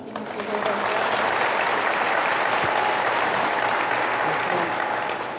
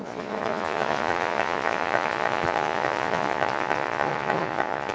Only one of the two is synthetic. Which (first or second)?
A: second